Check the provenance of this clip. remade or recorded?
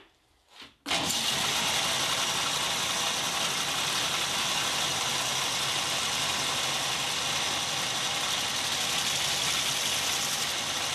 recorded